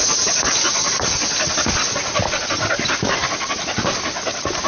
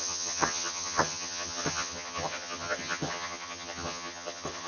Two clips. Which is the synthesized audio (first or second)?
second